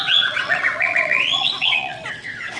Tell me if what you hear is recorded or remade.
remade